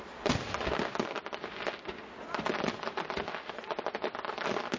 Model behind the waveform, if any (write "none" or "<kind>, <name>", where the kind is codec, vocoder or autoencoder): none